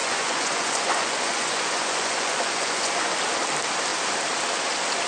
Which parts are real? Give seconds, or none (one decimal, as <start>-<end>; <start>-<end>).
3.1-5.1